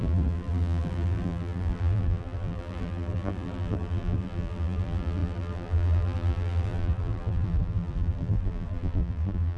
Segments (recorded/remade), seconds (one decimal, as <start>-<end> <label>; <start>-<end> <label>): 0.0-9.6 remade